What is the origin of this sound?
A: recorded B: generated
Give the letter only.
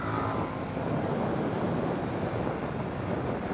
A